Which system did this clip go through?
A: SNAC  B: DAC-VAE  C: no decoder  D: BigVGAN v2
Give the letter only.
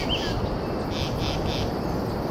C